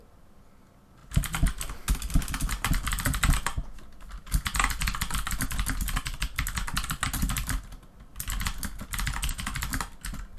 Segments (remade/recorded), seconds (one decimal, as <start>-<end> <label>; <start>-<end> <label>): 0.0-10.4 recorded